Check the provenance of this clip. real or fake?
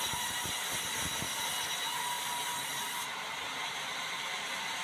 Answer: real